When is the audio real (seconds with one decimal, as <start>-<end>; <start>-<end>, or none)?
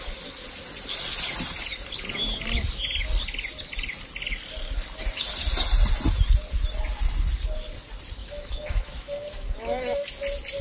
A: 0.0-8.2; 10.1-10.6